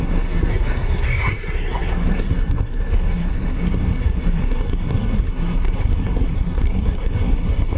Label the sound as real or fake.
fake